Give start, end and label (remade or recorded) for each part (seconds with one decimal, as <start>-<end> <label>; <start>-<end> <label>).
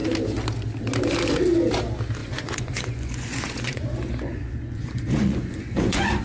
0.0-2.2 recorded; 2.2-6.2 remade